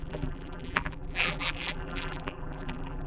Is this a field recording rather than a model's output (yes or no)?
no